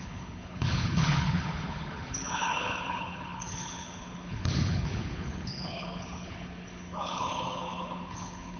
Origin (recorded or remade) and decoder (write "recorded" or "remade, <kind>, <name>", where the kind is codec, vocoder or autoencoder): remade, codec, HILCodec